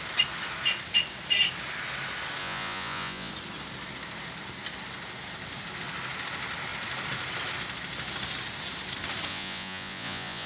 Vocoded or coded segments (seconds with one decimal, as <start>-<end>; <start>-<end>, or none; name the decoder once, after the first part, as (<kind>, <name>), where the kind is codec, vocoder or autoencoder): 2.4-3.3 (vocoder, Vocos); 9.3-10.5